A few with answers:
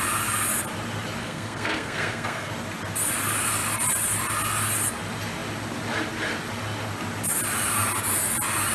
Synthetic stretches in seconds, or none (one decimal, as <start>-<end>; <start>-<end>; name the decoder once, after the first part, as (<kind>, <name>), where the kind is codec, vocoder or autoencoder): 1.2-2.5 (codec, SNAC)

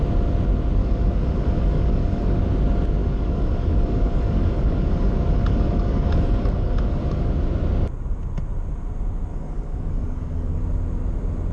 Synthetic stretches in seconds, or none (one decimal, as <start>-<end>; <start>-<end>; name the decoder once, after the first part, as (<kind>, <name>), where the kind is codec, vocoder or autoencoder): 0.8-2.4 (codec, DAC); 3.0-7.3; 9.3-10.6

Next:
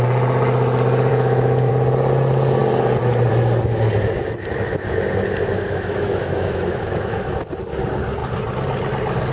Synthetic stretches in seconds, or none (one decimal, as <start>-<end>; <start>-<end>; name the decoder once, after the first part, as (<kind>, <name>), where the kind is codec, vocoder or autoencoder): 1.1-1.7 (autoencoder, DAC-VAE); 5.5-7.4

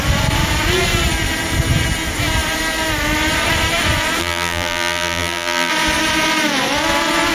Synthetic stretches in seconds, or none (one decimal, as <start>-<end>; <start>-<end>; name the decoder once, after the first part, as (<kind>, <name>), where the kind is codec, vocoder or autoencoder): 4.2-5.7 (vocoder, BigVGAN v2)